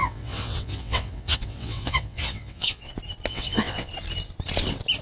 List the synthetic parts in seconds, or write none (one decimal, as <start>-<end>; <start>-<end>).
0.0-2.9; 3.3-3.9